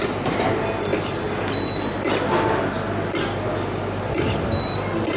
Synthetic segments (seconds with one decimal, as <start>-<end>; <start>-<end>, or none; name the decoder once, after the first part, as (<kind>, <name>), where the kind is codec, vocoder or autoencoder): none